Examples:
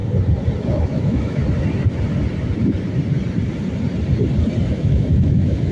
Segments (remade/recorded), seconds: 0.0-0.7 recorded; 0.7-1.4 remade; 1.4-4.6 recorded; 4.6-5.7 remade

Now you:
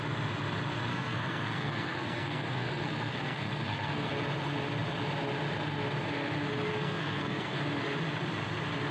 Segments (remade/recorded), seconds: 0.0-0.9 recorded; 0.9-4.1 remade; 4.1-6.7 recorded; 6.7-7.6 remade; 7.6-8.9 recorded

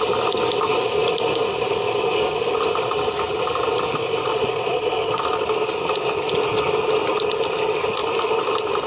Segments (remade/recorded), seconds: 0.0-4.0 recorded; 4.0-5.2 remade; 5.2-8.9 recorded

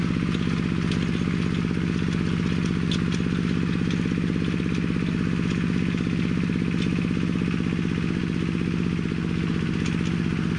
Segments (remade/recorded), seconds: 0.0-10.6 recorded

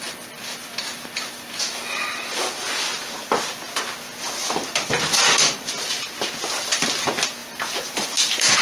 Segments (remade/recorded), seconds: 0.0-7.4 recorded; 7.4-8.6 remade

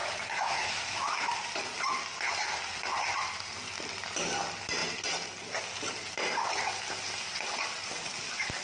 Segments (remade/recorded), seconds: 0.0-1.3 remade; 1.3-8.6 recorded